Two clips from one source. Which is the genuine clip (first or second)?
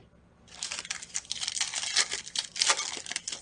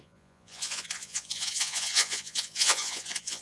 first